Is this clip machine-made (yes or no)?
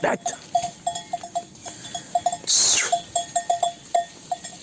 no